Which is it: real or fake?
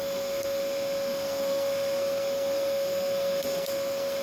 fake